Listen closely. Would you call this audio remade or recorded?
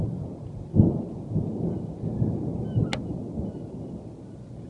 recorded